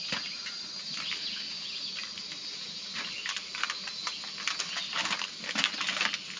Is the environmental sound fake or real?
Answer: real